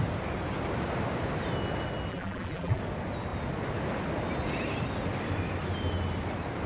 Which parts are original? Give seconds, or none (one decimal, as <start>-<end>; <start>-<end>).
0.0-2.1; 2.8-6.7